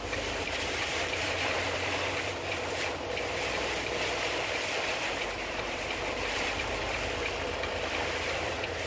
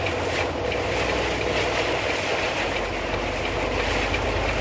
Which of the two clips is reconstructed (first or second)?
first